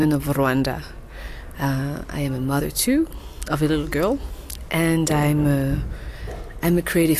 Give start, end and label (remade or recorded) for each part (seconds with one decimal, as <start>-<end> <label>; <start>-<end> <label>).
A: 0.0-7.2 recorded